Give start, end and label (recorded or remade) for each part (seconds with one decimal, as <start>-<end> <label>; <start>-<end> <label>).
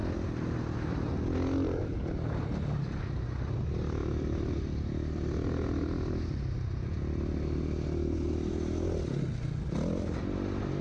0.0-10.8 recorded